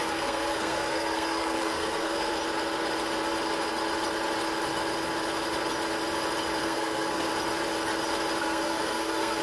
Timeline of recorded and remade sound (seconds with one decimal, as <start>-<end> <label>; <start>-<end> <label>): 0.0-2.3 remade; 2.3-6.6 recorded; 6.6-7.3 remade; 7.3-8.4 recorded; 8.4-9.4 remade